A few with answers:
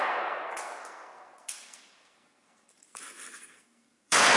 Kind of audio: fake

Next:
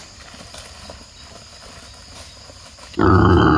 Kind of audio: real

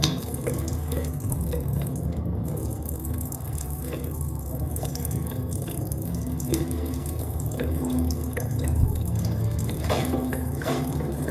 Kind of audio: fake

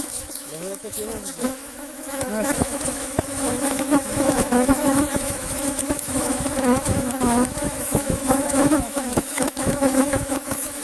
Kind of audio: fake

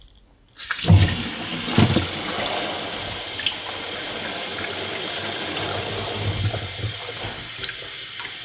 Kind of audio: real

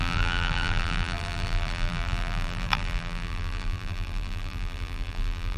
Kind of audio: fake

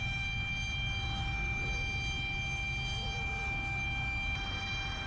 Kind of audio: real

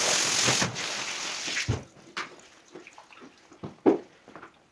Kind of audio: real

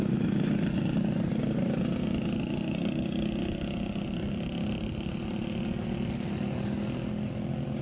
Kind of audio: real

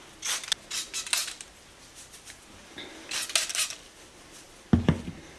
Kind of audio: real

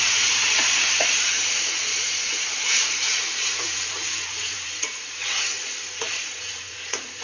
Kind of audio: fake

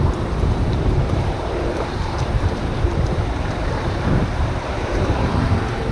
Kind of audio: fake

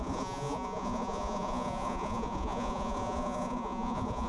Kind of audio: fake